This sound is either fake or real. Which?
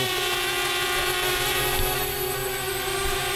real